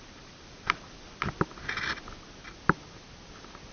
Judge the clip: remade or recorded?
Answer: recorded